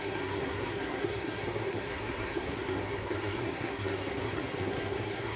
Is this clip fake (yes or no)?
yes